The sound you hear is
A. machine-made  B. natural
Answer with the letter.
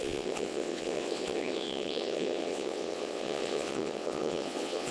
A